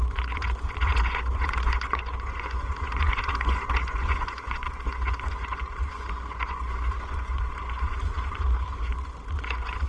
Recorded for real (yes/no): no